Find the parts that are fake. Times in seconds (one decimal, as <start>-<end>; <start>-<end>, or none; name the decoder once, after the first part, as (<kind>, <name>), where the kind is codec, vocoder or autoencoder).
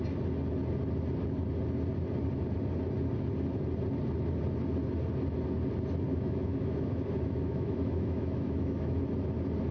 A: 6.1-9.0 (autoencoder, DAC-VAE)